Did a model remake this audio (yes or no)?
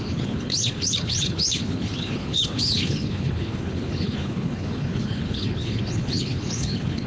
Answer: yes